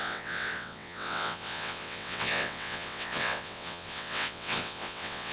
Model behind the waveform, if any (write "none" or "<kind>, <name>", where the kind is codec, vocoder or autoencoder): vocoder, WaveNeXt